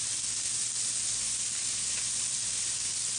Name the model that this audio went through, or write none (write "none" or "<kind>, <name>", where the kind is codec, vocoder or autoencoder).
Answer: vocoder, BigVGAN v2